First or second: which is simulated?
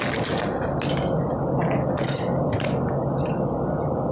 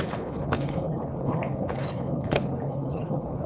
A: second